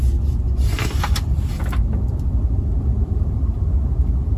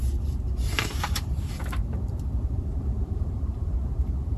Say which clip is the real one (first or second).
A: first